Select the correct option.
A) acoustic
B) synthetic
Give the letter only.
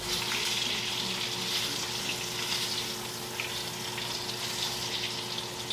A